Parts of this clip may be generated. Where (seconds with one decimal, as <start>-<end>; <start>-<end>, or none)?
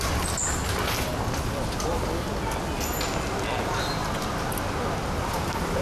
none